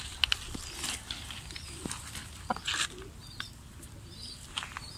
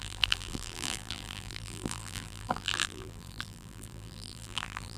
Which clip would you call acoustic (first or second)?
first